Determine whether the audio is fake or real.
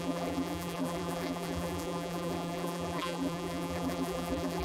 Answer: fake